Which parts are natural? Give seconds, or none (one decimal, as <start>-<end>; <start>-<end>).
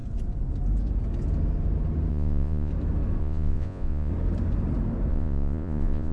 0.0-2.1; 2.7-3.2; 4.1-5.1